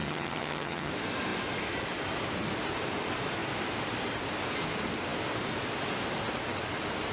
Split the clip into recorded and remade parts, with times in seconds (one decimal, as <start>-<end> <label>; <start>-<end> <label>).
0.0-0.9 remade; 0.9-7.1 recorded